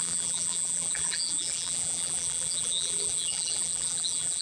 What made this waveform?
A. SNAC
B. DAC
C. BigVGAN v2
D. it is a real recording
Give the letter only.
C